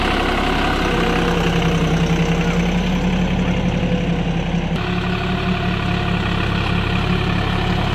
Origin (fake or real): real